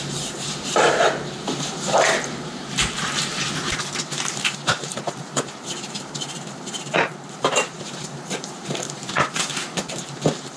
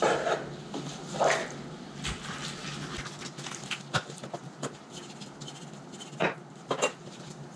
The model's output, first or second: first